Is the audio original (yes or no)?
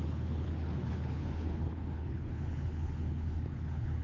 no